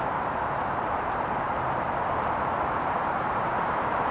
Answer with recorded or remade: remade